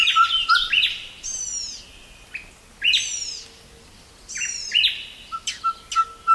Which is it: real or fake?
real